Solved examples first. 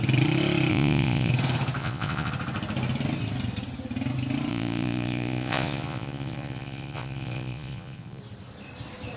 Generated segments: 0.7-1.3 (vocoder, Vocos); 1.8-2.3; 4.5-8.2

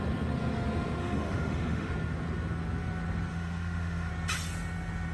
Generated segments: 1.0-1.9 (autoencoder, DAC-VAE); 3.3-4.1

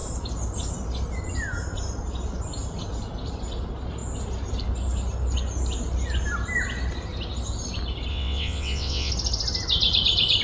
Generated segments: 8.1-9.1 (vocoder, WaveNeXt)

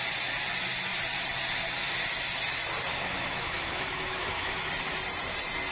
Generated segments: 2.9-4.7 (autoencoder, DAC-VAE)

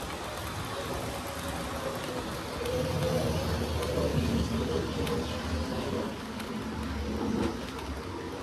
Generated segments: 4.1-4.7 (codec, DAC); 5.7-6.5